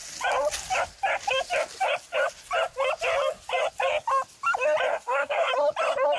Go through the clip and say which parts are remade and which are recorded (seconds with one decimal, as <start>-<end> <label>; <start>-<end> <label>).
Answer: 0.0-4.9 recorded; 4.9-5.5 remade; 5.5-6.2 recorded

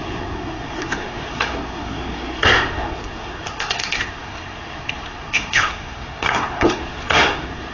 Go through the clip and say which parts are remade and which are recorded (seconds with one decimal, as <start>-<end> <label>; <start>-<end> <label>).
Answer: 0.0-7.7 remade